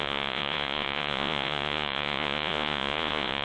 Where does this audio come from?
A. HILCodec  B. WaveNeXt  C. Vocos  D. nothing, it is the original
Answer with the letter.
C